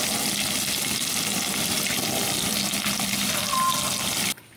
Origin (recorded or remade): recorded